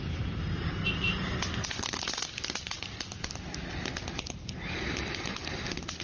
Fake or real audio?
real